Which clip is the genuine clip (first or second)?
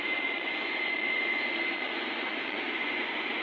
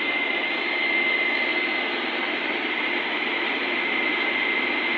second